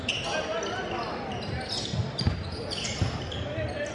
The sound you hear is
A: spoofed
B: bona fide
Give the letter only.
B